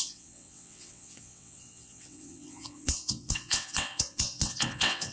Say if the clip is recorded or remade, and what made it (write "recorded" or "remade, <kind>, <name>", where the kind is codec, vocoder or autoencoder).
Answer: remade, vocoder, WaveNeXt